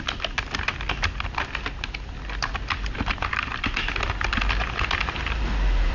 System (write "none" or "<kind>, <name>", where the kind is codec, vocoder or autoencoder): vocoder, BigVGAN v2